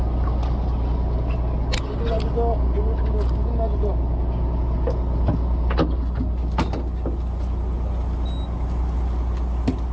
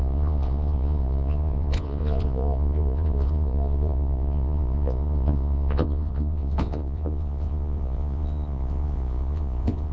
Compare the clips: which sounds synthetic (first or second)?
second